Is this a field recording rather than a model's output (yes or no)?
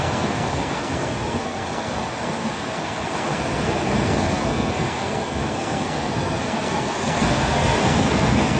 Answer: no